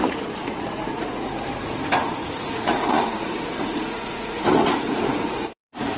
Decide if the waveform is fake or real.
fake